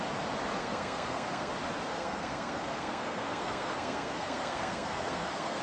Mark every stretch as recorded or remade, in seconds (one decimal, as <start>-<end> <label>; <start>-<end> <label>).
0.0-0.6 recorded; 0.6-1.5 remade; 1.5-1.9 recorded; 1.9-5.6 remade